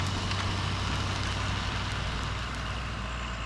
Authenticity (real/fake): real